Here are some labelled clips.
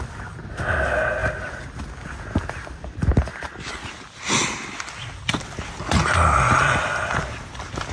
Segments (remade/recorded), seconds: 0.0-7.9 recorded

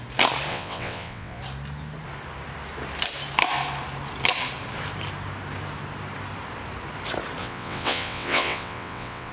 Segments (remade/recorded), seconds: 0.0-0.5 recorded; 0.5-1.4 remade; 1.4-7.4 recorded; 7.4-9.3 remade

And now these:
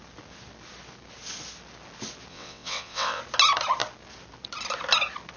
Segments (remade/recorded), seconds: 0.0-2.3 recorded; 2.3-3.2 remade; 3.2-5.4 recorded

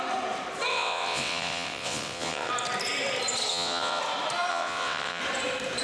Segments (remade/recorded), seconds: 0.0-0.7 recorded; 0.7-2.5 remade; 2.5-3.5 recorded; 3.5-4.0 remade; 4.0-4.5 recorded; 4.5-5.2 remade; 5.2-5.8 recorded

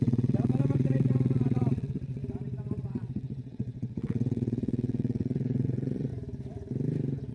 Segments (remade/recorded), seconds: 0.0-2.2 remade; 2.2-2.9 recorded; 2.9-6.1 remade; 6.1-7.3 recorded

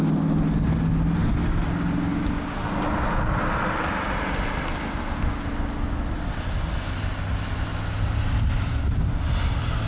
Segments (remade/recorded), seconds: 0.0-9.9 recorded

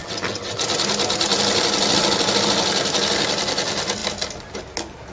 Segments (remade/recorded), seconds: 0.0-0.6 remade; 0.6-5.1 recorded

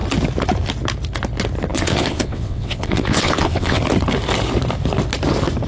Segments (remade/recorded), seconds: 0.0-1.7 recorded; 1.7-3.8 remade; 3.8-5.7 recorded